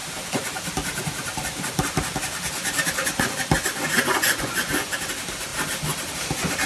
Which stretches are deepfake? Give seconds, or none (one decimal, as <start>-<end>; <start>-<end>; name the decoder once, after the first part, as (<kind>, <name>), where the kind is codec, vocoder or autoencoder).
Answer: 4.2-4.9 (vocoder, Vocos)